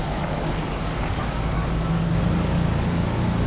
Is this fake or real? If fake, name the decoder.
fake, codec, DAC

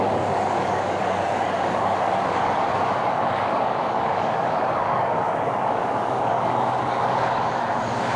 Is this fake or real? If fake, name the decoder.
fake, codec, DAC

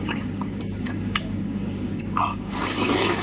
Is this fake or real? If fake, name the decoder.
fake, codec, DAC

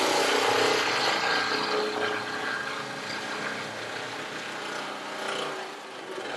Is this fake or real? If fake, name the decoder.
real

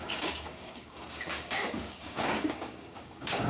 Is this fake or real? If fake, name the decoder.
fake, codec, DAC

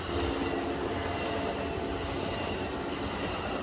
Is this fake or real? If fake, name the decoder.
real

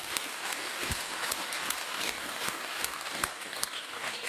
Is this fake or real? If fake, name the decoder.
fake, codec, DAC